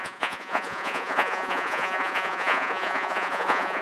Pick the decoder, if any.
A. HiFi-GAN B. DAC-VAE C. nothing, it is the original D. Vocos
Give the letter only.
D